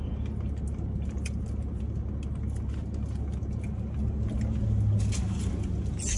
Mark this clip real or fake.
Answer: real